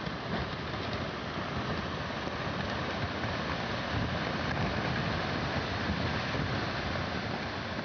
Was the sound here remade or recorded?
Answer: recorded